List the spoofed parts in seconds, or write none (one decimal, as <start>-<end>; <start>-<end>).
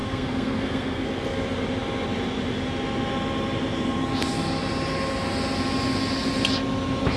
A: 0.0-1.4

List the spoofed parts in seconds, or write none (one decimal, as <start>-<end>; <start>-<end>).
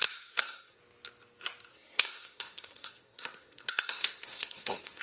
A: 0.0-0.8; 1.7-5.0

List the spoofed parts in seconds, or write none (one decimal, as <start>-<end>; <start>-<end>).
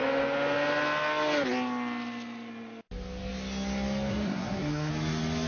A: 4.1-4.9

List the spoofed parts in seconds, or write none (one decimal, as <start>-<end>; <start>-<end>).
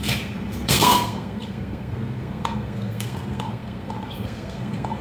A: 0.0-5.0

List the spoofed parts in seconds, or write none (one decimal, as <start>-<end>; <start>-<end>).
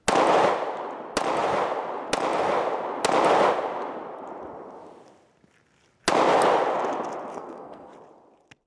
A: 7.3-7.9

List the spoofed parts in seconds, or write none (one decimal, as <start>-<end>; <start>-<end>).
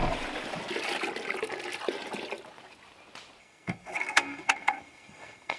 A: 3.4-5.6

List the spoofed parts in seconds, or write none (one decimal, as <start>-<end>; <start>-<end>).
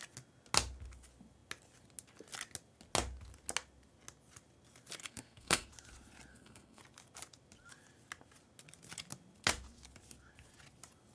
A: 5.0-5.7; 6.3-6.8